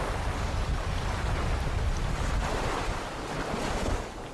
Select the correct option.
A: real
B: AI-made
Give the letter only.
B